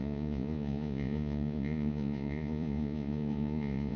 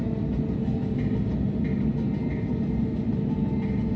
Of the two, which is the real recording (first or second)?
second